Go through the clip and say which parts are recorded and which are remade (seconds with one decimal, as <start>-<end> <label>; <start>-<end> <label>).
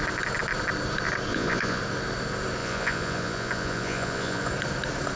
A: 0.0-1.3 recorded; 1.3-1.8 remade; 1.8-2.6 recorded; 2.6-4.5 remade; 4.5-5.2 recorded